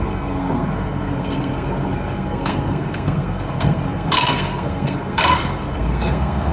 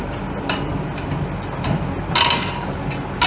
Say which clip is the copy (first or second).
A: first